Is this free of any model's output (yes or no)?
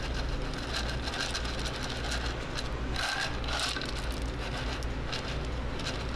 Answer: yes